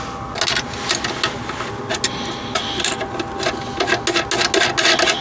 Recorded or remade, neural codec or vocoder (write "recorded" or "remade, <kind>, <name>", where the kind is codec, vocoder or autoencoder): recorded